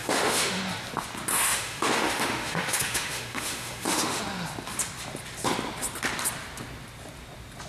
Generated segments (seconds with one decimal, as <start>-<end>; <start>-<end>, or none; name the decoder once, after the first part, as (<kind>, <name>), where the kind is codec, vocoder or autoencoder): 0.0-0.6 (autoencoder, DAC-VAE); 1.3-4.2